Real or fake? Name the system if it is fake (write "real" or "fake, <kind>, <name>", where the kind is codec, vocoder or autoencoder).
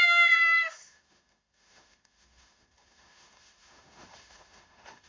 fake, autoencoder, DAC-VAE